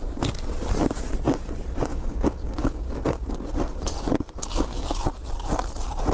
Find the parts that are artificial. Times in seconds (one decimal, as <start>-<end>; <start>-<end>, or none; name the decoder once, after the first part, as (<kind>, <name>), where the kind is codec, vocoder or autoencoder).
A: 1.9-3.0 (codec, DAC)